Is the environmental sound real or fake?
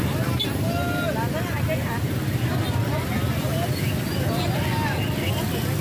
real